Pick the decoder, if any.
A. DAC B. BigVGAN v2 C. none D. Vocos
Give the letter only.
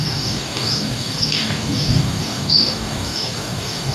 A